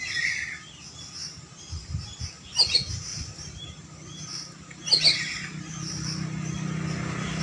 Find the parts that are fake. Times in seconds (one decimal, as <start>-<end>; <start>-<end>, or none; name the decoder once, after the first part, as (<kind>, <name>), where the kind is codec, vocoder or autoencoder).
none